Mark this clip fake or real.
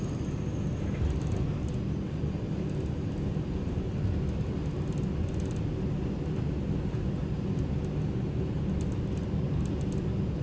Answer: real